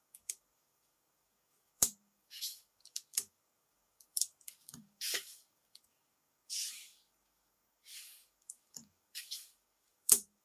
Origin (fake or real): fake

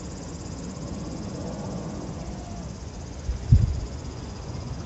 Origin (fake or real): fake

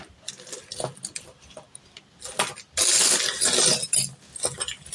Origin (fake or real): real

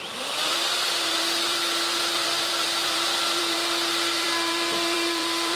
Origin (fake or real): fake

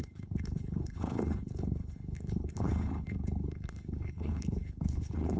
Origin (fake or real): fake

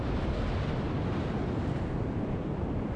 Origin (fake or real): real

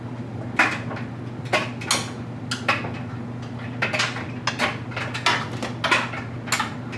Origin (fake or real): real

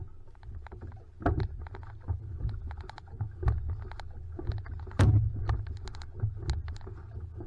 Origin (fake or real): real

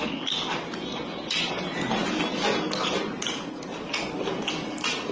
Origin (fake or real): real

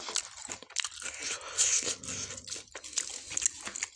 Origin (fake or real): real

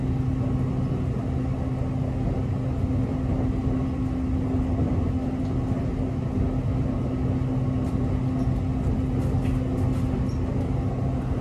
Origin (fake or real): real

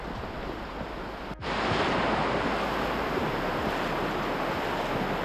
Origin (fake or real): real